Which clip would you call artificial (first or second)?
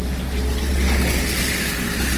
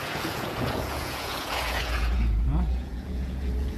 second